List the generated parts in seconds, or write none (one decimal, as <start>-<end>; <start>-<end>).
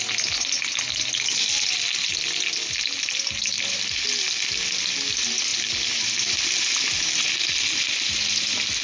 none